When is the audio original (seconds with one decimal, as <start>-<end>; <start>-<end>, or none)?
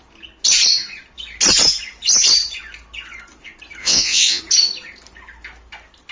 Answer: 0.0-3.8; 4.4-6.1